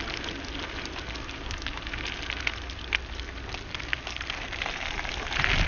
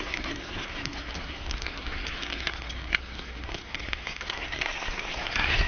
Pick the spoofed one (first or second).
second